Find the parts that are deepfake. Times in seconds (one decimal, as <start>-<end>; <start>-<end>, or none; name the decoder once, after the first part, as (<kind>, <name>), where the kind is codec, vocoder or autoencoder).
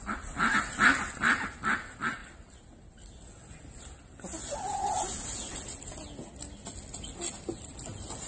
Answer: none